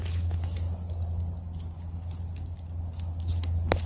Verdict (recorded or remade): recorded